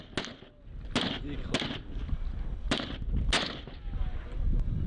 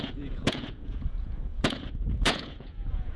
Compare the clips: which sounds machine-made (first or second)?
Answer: second